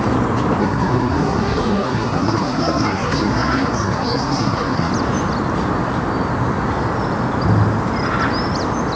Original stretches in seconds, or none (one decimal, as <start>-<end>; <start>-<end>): 0.0-0.6; 4.9-9.0